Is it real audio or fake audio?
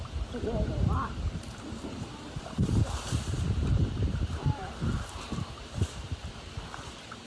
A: fake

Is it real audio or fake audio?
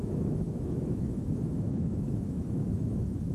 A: fake